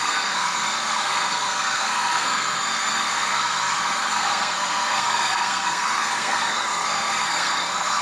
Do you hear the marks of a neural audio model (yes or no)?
yes